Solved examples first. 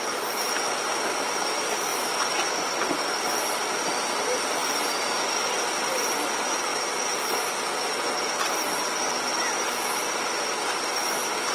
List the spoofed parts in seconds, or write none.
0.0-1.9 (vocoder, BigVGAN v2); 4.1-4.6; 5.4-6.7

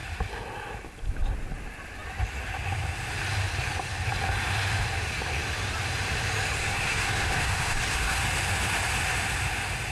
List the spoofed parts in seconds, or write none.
6.6-8.2 (codec, SNAC)

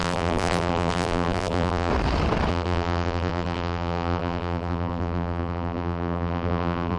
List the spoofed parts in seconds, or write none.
0.0-1.9 (vocoder, BigVGAN v2); 2.5-7.0